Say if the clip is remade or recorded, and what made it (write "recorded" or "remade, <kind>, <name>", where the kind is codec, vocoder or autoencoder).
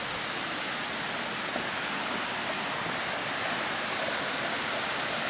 recorded